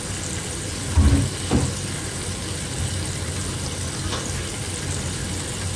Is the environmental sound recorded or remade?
recorded